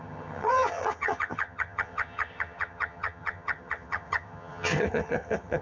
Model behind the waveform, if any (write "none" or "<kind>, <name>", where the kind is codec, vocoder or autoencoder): vocoder, HiFi-GAN